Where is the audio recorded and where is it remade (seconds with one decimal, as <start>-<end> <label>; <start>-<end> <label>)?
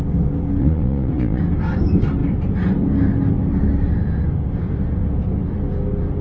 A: 0.0-0.6 recorded; 0.6-1.4 remade; 1.4-6.2 recorded